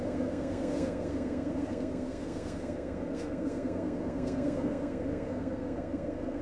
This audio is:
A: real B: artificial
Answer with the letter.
B